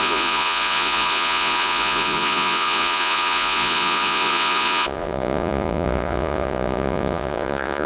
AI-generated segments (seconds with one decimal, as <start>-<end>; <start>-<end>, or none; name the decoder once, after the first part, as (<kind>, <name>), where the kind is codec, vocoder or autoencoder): 0.0-7.9 (vocoder, Vocos)